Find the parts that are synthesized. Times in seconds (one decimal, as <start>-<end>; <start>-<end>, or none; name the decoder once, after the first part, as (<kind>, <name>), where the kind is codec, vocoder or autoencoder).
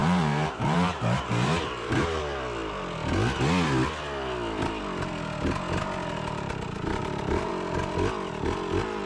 0.0-2.2 (vocoder, BigVGAN v2); 7.0-7.5